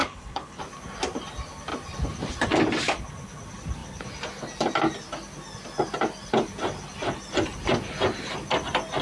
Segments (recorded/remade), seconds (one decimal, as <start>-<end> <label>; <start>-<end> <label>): 0.0-0.6 remade; 0.6-9.0 recorded